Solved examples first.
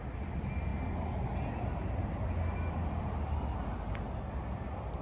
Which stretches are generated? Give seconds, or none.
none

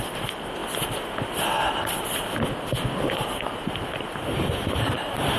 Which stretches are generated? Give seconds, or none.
none

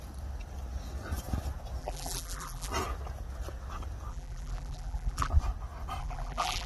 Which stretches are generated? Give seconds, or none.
1.8-2.7 (vocoder, BigVGAN v2); 4.1-5.3; 6.0-6.7

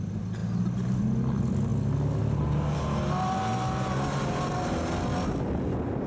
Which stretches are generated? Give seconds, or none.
none